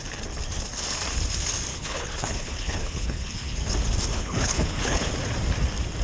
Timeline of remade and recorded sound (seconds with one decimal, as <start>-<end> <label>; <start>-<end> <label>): 0.0-1.7 recorded; 1.7-3.6 remade; 3.6-4.1 recorded; 4.1-5.1 remade; 5.1-6.0 recorded